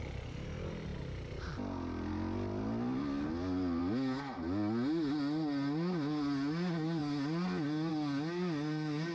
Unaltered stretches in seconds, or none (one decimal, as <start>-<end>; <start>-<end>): 0.0-9.1